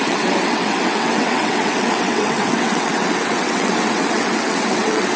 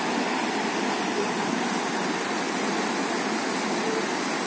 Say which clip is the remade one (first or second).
first